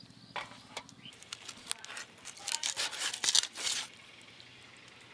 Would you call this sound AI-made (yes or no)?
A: no